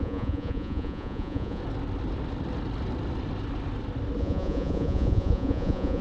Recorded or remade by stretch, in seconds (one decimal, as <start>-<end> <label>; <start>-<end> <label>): 0.0-1.6 remade; 1.6-4.2 recorded; 4.2-6.0 remade